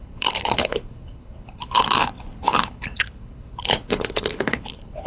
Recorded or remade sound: remade